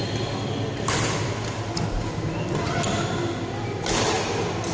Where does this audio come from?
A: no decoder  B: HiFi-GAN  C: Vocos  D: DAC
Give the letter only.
A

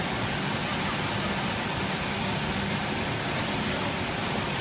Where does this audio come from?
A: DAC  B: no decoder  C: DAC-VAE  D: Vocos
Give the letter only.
B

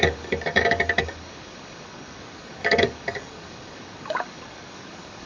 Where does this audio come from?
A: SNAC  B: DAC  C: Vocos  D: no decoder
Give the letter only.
B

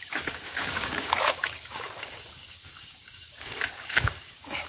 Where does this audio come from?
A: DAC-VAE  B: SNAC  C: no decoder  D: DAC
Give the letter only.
D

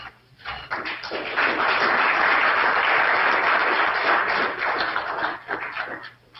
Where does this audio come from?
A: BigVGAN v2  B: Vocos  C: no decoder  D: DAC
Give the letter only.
C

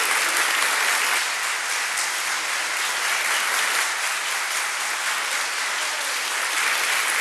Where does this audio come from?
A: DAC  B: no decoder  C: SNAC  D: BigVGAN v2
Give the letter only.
B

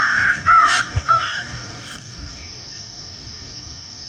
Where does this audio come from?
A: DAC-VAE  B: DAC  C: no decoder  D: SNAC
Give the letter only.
B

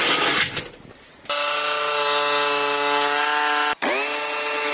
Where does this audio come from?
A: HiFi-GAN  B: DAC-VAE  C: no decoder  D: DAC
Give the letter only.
C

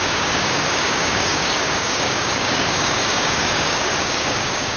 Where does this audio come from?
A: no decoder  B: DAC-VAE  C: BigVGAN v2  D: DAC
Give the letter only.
D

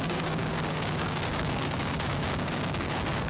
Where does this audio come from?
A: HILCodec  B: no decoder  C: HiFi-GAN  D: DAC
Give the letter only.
D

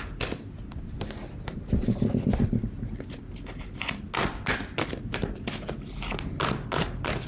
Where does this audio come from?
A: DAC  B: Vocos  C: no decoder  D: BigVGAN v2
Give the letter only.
C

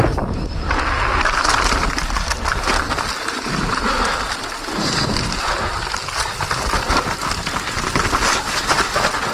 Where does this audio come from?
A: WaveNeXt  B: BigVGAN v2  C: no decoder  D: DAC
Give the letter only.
C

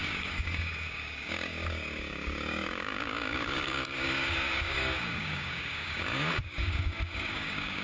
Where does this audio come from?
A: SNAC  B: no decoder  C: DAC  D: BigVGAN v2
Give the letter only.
C